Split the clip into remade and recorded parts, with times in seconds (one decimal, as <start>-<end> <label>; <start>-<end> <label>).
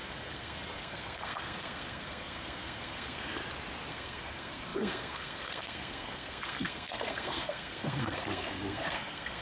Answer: 0.0-3.3 remade; 3.3-3.9 recorded; 3.9-9.4 remade